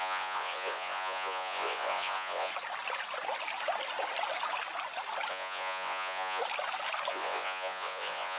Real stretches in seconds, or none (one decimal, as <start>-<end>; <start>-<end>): 2.5-5.3; 6.4-7.1